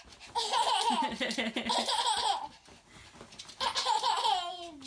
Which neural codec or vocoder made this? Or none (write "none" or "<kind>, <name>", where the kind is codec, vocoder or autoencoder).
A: none